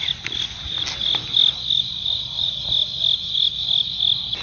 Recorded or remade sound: recorded